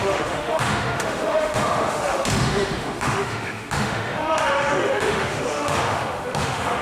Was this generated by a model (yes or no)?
yes